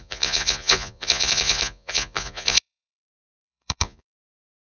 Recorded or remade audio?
remade